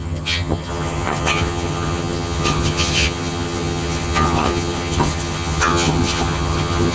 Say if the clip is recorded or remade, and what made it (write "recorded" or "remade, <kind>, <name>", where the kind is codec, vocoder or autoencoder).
remade, vocoder, HiFi-GAN